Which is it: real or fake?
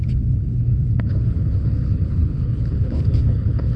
fake